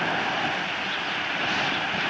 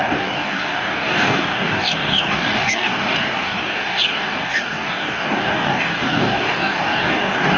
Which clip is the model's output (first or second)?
second